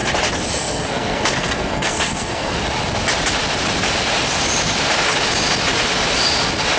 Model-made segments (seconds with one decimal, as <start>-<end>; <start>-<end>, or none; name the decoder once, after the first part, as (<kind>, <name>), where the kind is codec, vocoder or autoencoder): 0.5-2.6 (codec, SNAC)